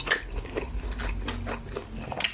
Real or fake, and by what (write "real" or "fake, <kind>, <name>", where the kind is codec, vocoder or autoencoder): real